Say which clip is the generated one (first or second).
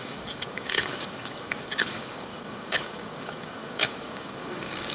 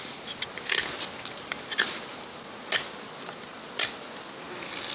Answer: first